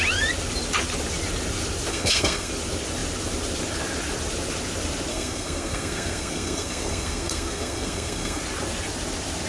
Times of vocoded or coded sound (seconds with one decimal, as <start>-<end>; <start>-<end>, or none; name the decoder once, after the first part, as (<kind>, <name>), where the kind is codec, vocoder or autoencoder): 1.9-2.5 (codec, SNAC); 5.1-8.4